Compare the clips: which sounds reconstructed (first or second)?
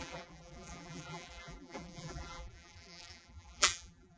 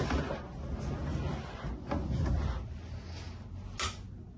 first